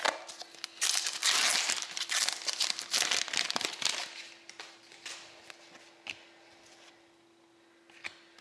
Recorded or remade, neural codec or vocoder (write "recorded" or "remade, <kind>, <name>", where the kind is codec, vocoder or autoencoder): recorded